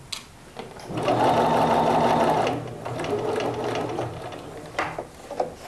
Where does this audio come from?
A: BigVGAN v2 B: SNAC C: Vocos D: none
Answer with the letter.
D